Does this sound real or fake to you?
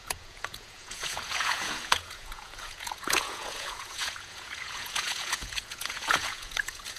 fake